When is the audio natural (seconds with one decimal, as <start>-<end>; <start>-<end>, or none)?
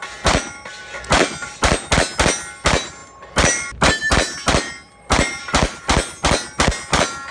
0.0-7.3